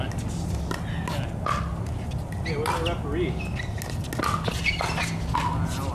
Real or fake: real